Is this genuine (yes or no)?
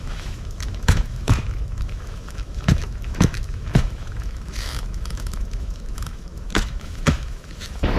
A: no